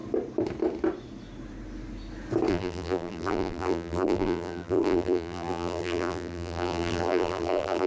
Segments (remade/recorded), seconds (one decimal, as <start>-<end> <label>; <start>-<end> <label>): 0.0-2.5 recorded; 2.5-7.9 remade